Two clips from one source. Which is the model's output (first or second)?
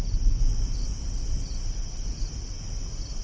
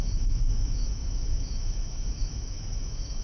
second